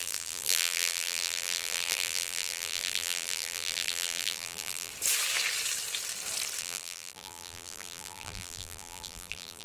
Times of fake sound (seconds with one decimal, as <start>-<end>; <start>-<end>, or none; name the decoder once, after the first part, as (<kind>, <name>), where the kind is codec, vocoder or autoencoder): 0.0-4.9 (vocoder, BigVGAN v2); 6.6-9.6